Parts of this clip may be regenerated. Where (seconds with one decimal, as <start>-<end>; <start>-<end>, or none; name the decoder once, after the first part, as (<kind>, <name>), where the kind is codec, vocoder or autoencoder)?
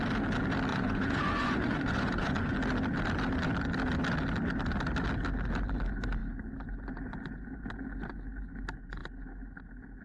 0.7-2.5 (vocoder, Vocos)